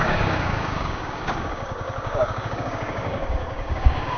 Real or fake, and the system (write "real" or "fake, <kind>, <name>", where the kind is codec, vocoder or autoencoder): fake, codec, DAC